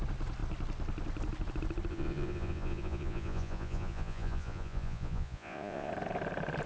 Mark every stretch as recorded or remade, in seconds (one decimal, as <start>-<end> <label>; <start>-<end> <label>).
0.0-1.9 recorded; 1.9-5.9 remade; 5.9-6.7 recorded